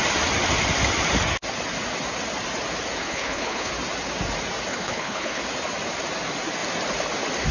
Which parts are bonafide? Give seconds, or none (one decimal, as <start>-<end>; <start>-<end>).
0.0-3.0; 3.7-4.7; 5.4-7.5